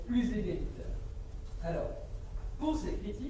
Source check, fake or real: fake